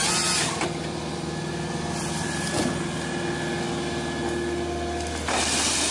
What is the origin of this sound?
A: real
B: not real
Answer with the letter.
A